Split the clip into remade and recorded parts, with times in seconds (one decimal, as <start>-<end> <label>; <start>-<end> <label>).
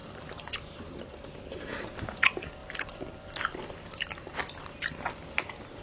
0.0-1.7 remade; 1.7-5.8 recorded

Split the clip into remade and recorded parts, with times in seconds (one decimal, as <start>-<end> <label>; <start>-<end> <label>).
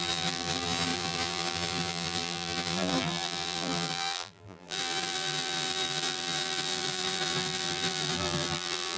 0.0-9.0 remade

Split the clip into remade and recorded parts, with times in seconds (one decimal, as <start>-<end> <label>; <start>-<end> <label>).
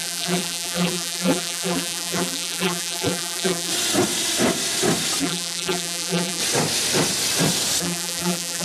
0.0-3.7 remade; 3.7-5.2 recorded; 5.2-6.4 remade; 6.4-7.8 recorded; 7.8-8.6 remade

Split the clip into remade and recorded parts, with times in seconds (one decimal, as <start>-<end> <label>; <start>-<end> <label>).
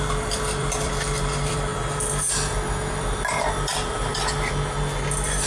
0.0-1.7 remade; 1.7-2.9 recorded; 2.9-4.1 remade; 4.1-5.5 recorded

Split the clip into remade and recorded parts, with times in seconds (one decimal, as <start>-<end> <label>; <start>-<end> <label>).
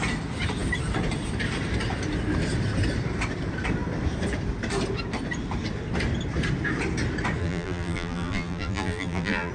0.0-7.4 recorded; 7.4-9.5 remade